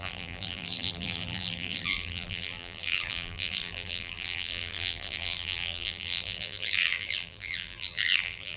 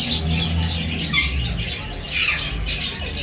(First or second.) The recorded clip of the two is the second